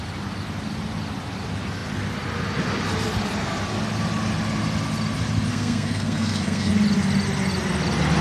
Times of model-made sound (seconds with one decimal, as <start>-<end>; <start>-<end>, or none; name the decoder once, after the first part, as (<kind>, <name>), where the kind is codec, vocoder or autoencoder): 5.5-6.7 (codec, SNAC)